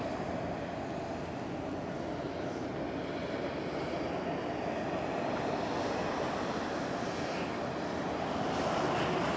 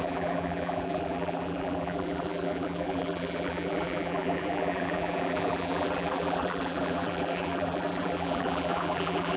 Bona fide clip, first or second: first